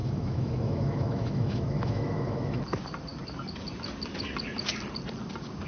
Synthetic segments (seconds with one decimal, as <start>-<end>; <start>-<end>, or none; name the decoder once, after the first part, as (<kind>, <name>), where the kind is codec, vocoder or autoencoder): 0.0-2.6 (autoencoder, DAC-VAE)